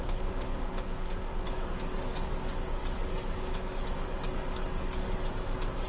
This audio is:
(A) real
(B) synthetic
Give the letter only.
B